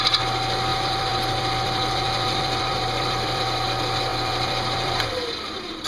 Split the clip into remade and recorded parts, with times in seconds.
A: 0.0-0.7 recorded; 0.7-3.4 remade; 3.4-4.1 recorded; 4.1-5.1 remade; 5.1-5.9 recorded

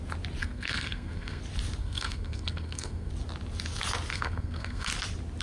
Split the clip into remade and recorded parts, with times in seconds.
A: 0.0-0.4 recorded; 0.4-1.4 remade; 1.4-1.8 recorded; 1.8-3.1 remade; 3.1-4.1 recorded; 4.1-4.9 remade; 4.9-5.4 recorded

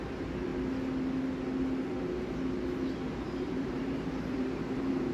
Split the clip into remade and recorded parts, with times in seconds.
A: 0.0-0.5 remade; 0.5-3.0 recorded; 3.0-5.1 remade